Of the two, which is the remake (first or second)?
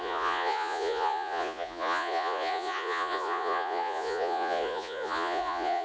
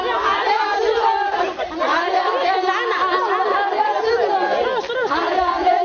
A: first